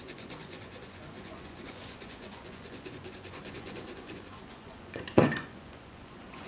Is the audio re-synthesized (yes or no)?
yes